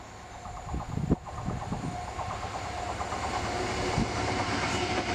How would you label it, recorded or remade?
recorded